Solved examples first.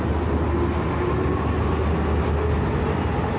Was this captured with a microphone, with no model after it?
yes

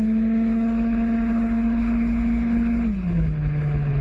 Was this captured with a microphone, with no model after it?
no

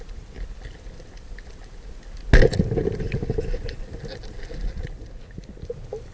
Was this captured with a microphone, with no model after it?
yes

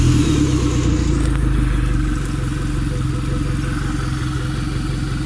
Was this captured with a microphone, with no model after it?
yes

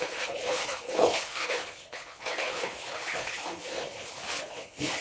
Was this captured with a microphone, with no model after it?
no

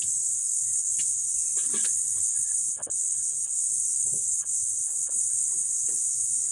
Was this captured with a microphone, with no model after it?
no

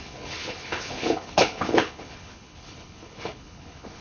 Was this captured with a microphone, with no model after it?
no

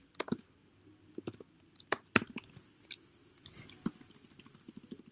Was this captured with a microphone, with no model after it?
yes